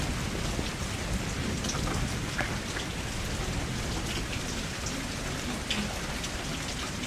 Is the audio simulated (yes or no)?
no